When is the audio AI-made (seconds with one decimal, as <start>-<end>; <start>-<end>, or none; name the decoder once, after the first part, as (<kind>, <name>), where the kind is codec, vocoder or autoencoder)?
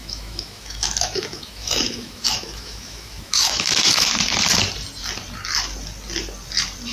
0.0-4.1 (autoencoder, DAC-VAE)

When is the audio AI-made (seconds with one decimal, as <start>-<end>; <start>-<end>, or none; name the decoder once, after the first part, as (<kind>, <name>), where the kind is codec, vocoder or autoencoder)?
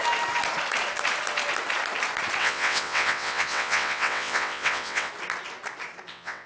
2.4-5.1 (vocoder, WaveNeXt); 6.1-6.5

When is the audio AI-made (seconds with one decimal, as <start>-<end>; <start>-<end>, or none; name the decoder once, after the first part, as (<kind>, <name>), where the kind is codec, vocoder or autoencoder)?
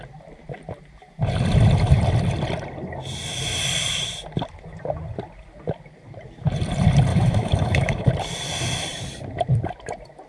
7.1-8.1 (autoencoder, DAC-VAE)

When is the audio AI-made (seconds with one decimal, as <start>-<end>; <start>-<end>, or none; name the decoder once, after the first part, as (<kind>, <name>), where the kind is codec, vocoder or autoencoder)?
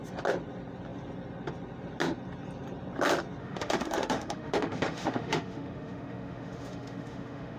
3.4-7.6 (autoencoder, DAC-VAE)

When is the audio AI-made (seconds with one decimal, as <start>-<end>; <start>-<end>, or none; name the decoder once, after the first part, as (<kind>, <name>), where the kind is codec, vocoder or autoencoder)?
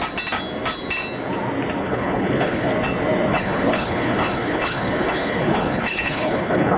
1.8-2.7 (codec, HILCodec); 3.3-6.8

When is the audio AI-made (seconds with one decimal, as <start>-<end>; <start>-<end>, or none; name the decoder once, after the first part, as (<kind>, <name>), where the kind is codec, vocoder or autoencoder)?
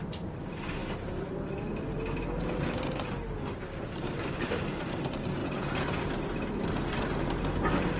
0.8-1.7 (vocoder, BigVGAN v2)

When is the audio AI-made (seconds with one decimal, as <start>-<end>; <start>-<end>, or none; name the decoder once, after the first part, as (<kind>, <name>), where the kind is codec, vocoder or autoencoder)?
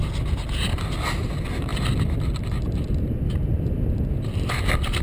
1.7-5.0 (vocoder, BigVGAN v2)